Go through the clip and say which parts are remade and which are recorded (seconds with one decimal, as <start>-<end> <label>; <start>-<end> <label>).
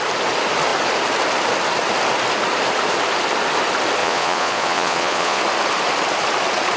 0.0-4.0 recorded; 4.0-5.4 remade; 5.4-6.8 recorded